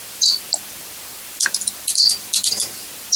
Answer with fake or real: fake